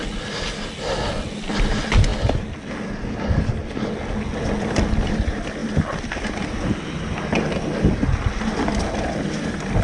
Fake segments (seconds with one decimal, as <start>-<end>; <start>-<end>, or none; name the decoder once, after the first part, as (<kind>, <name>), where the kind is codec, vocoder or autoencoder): none